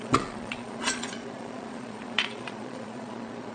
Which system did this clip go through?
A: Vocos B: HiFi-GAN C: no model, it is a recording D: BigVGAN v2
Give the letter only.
A